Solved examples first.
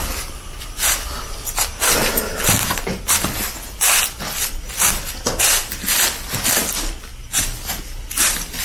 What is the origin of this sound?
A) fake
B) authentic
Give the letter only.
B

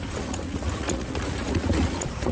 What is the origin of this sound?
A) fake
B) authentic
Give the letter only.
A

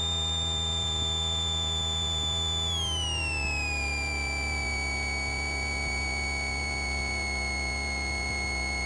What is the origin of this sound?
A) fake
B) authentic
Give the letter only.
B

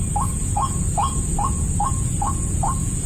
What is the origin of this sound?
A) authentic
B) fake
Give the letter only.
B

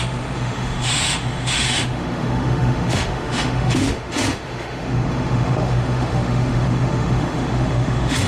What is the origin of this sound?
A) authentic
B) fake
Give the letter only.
B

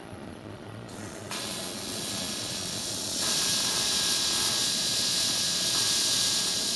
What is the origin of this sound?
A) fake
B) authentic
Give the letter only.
A